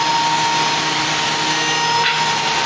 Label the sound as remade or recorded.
recorded